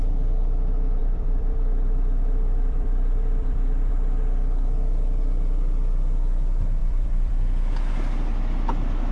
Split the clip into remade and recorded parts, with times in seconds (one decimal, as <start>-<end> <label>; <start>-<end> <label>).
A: 0.0-1.0 recorded; 1.0-3.9 remade; 3.9-6.8 recorded; 6.8-7.3 remade; 7.3-9.1 recorded